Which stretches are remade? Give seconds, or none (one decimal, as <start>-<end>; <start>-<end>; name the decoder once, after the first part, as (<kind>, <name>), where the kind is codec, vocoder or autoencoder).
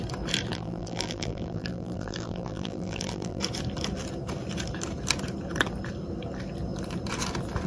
0.5-3.4 (vocoder, BigVGAN v2)